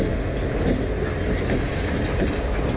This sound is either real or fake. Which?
real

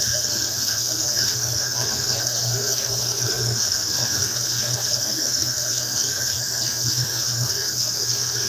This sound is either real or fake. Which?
fake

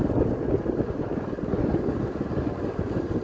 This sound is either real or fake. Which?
real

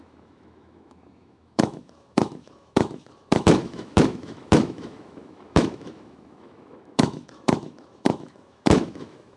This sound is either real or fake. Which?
fake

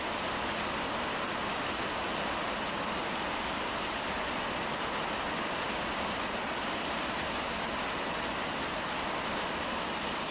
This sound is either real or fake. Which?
real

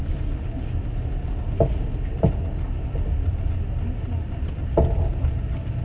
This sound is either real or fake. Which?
real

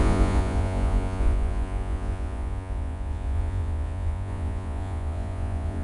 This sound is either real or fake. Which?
fake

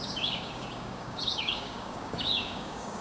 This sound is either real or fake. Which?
fake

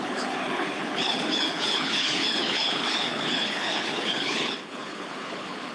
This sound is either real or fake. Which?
fake